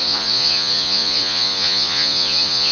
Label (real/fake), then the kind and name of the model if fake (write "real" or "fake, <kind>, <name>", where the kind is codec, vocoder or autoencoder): fake, vocoder, Vocos